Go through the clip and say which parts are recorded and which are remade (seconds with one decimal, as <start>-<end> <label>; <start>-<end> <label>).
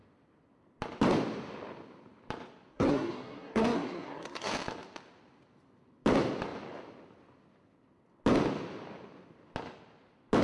0.0-2.7 recorded; 2.7-4.5 remade; 4.5-10.4 recorded